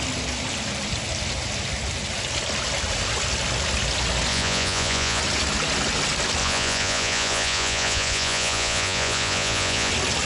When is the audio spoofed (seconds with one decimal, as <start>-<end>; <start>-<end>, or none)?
4.3-5.2; 6.4-9.9